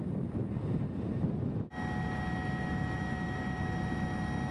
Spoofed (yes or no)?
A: no